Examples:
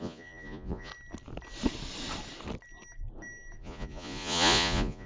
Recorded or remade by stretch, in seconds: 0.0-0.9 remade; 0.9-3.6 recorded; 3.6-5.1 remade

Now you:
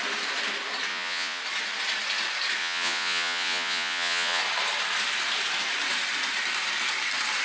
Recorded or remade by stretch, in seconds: 0.0-0.9 recorded; 0.9-1.4 remade; 1.4-2.6 recorded; 2.6-4.4 remade; 4.4-7.4 recorded

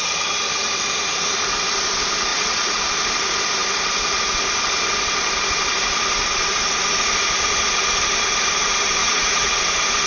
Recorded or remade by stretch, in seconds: 0.0-2.3 recorded; 2.3-2.8 remade; 2.8-9.0 recorded; 9.0-9.6 remade; 9.6-10.1 recorded

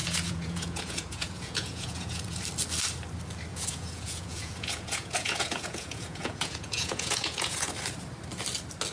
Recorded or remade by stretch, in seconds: 0.0-2.4 remade; 2.4-3.5 recorded; 3.5-7.7 remade; 7.7-8.9 recorded

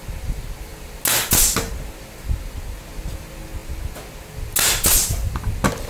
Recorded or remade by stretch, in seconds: 0.0-5.9 recorded

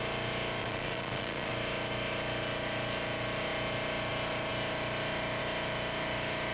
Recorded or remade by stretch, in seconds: 0.0-0.6 recorded; 0.6-1.5 remade; 1.5-6.5 recorded

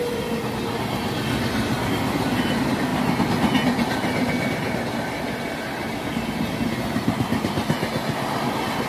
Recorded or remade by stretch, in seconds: 0.0-8.9 recorded